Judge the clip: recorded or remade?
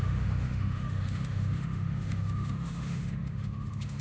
remade